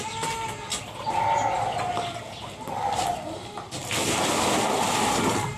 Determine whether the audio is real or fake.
real